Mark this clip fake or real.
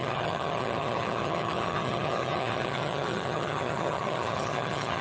fake